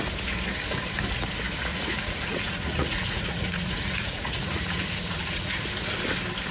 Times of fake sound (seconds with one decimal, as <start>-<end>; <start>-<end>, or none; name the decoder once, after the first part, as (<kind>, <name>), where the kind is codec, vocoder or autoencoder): 1.7-5.6 (vocoder, Vocos)